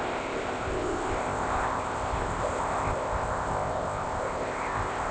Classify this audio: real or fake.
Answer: fake